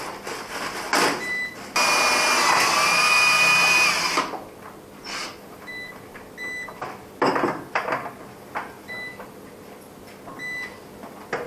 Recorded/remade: recorded